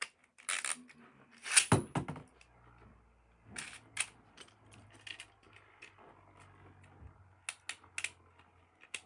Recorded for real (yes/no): yes